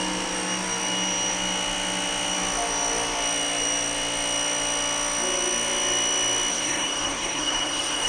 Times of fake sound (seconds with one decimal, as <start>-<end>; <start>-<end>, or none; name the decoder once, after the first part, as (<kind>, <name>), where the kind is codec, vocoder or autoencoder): 6.5-8.1 (codec, SNAC)